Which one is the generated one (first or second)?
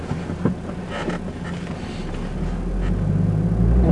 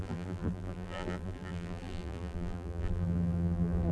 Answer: second